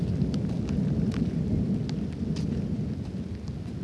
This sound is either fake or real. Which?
real